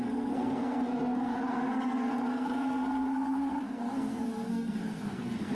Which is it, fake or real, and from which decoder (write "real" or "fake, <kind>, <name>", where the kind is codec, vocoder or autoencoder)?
fake, codec, SNAC